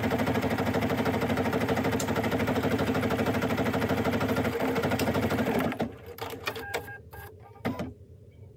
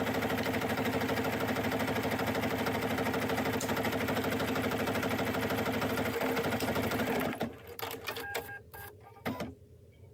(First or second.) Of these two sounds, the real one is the second